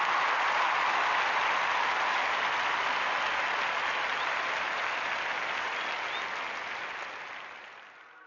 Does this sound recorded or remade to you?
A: recorded